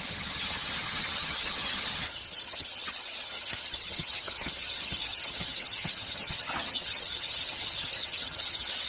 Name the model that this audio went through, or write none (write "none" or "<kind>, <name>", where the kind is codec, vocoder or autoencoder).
vocoder, HiFi-GAN